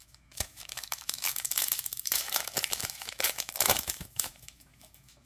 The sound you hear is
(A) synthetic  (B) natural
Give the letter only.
A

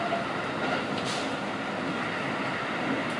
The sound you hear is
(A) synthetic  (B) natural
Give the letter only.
B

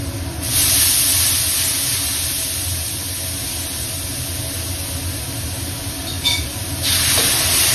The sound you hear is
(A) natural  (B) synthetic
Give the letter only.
A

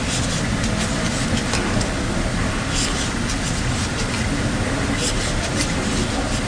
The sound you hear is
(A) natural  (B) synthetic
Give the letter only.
A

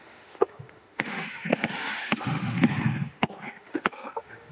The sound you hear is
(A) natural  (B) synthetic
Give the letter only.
B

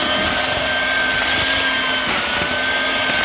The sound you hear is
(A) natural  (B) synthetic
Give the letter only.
A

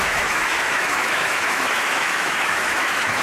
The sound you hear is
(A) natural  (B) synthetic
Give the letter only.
B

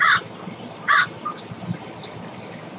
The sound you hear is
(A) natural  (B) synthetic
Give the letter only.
A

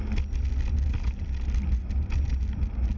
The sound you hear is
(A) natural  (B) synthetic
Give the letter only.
A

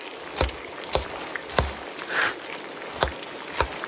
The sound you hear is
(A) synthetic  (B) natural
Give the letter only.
B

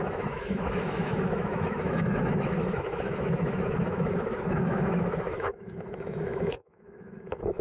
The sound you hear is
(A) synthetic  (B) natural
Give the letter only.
A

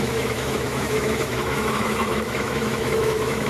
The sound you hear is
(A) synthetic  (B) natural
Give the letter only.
A